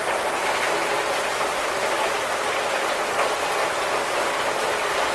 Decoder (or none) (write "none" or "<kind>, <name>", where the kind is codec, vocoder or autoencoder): none